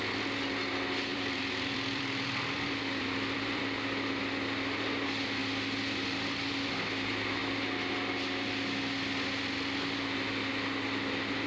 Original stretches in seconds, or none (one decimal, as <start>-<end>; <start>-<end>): 0.0-1.1; 3.6-11.5